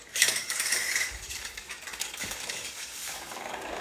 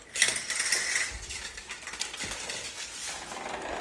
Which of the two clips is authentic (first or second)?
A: second